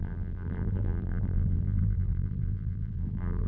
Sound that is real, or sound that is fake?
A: fake